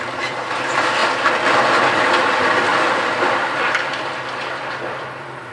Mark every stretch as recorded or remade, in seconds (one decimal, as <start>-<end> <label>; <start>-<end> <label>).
0.0-1.0 remade; 1.0-2.2 recorded; 2.2-5.5 remade